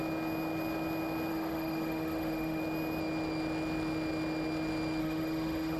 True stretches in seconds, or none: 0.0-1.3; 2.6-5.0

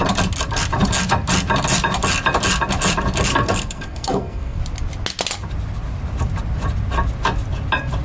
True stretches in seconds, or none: 0.0-3.3; 4.6-8.0

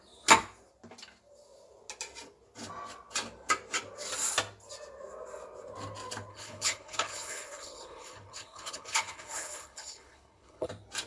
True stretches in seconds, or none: 0.0-6.3; 10.7-11.1

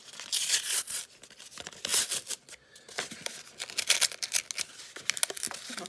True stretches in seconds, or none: 0.0-0.4; 1.0-5.9

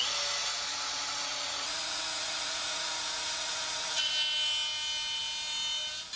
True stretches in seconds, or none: 0.0-0.4; 4.1-6.2

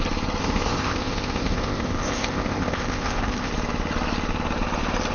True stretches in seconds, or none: 0.0-0.4; 3.5-5.1

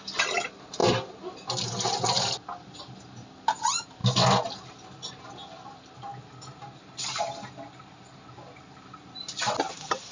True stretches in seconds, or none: 0.0-10.1

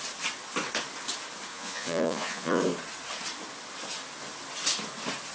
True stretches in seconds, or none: 0.0-1.5; 2.6-5.3